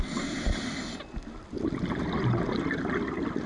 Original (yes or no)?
yes